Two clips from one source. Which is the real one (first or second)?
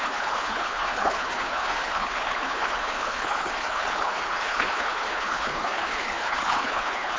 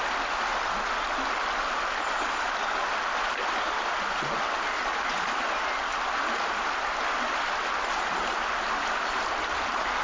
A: second